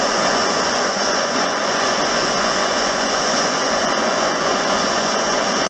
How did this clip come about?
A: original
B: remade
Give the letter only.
B